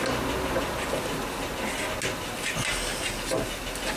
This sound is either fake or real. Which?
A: real